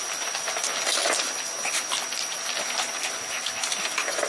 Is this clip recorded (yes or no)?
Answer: yes